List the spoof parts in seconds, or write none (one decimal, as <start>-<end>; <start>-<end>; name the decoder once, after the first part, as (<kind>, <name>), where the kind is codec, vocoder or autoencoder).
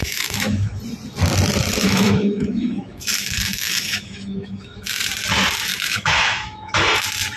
0.0-0.8 (autoencoder, DAC-VAE); 1.8-5.1; 5.7-6.7